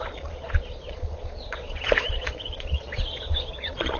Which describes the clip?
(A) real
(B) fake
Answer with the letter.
B